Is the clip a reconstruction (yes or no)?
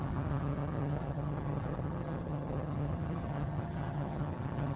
yes